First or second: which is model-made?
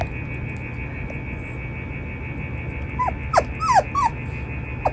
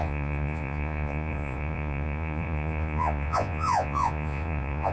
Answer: second